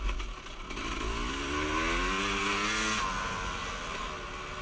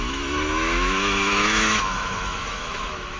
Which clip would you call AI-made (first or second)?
second